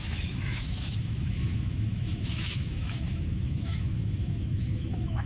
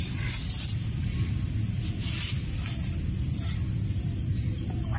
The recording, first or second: second